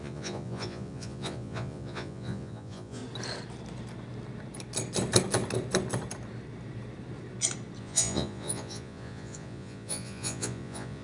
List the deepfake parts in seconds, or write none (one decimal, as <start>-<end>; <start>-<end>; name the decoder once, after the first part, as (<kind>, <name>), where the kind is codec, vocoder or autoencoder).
0.0-3.0 (vocoder, Vocos); 7.8-11.0